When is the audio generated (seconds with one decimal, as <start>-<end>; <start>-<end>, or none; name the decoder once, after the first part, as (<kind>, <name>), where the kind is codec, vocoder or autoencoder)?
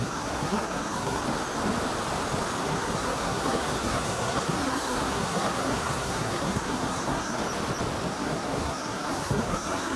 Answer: 0.0-1.2 (codec, SNAC); 2.6-7.4; 8.1-10.0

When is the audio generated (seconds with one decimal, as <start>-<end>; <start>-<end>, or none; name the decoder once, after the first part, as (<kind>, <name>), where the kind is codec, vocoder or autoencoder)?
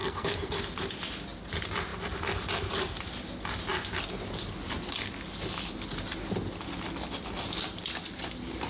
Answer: 0.0-0.6 (codec, SNAC)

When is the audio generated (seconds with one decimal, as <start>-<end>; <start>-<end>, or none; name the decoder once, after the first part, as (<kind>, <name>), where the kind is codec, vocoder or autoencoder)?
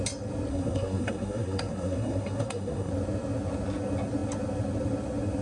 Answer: 0.5-2.9 (codec, SNAC)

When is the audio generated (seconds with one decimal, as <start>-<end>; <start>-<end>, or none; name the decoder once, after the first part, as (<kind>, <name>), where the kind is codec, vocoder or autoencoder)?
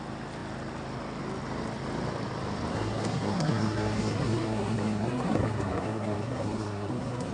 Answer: 2.7-7.3 (codec, SNAC)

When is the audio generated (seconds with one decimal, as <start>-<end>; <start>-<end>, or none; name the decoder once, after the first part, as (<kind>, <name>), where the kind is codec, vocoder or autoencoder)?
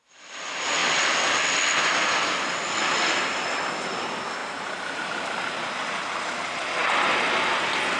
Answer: none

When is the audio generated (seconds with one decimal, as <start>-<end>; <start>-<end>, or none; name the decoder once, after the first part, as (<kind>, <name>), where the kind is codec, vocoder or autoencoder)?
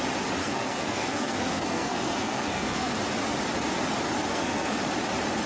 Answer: 0.4-2.9 (codec, SNAC); 4.3-4.8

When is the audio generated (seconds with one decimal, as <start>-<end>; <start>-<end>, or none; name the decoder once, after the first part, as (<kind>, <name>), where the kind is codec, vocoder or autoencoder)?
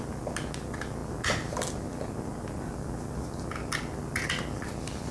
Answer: none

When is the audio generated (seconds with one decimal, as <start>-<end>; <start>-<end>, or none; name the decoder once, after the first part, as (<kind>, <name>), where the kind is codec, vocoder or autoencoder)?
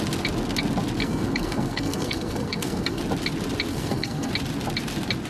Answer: 1.0-3.0 (codec, SNAC); 3.7-4.3